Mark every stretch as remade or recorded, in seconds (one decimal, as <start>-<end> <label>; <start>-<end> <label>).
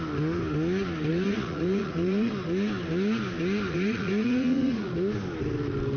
0.0-1.1 recorded; 1.1-2.3 remade; 2.3-3.7 recorded; 3.7-4.9 remade; 4.9-6.0 recorded